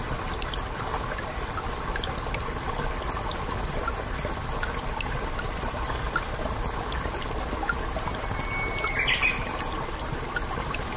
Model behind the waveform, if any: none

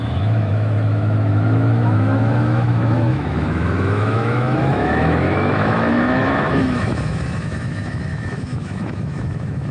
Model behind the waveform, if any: autoencoder, DAC-VAE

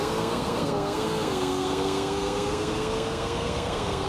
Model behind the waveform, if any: codec, SNAC